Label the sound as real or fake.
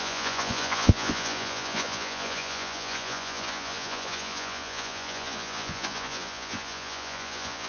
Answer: fake